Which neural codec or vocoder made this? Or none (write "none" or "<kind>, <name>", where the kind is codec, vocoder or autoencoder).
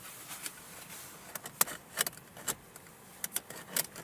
none